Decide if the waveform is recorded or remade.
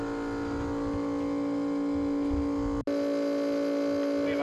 recorded